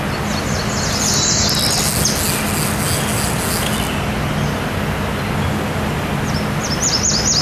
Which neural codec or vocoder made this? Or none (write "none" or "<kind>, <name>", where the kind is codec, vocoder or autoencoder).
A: none